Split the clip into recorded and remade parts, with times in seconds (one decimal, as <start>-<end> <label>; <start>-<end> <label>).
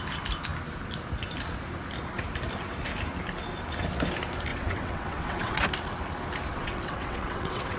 0.0-4.5 recorded; 4.5-5.6 remade; 5.6-6.5 recorded; 6.5-7.8 remade